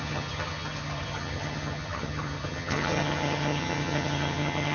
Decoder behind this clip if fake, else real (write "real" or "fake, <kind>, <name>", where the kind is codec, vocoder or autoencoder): fake, vocoder, HiFi-GAN